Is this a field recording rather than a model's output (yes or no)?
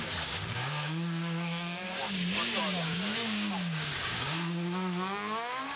no